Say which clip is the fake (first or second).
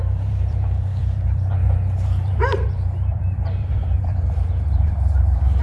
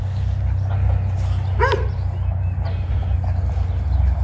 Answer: first